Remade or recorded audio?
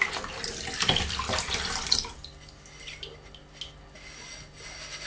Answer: recorded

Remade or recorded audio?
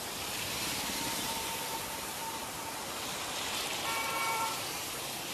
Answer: remade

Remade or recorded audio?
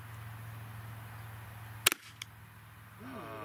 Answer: recorded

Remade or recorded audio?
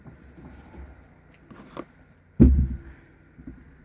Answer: remade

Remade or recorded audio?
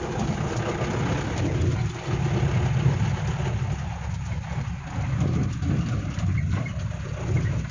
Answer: recorded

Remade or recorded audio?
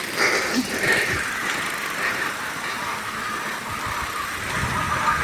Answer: recorded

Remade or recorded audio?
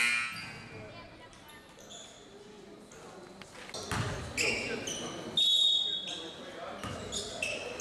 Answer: recorded